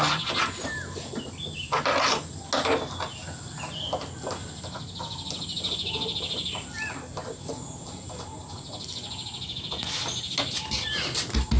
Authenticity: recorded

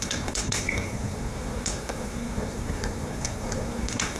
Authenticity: remade